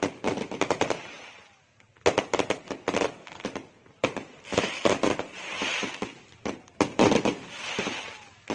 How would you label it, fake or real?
real